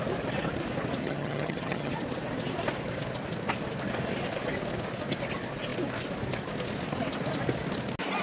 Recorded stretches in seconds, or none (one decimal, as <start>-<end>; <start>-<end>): 0.0-1.0; 1.9-8.2